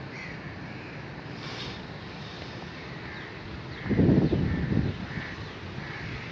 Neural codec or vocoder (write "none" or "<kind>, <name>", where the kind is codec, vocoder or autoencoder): none